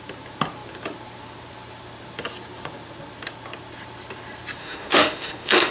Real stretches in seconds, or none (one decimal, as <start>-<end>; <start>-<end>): 0.0-4.6